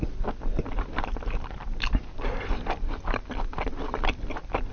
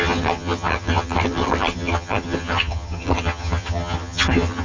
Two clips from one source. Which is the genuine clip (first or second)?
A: first